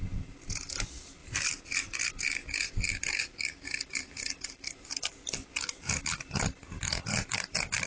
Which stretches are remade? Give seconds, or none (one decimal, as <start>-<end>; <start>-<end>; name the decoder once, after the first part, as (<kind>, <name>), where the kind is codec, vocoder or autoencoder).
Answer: 7.1-7.9 (vocoder, BigVGAN v2)